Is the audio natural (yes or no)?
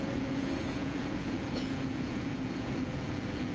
no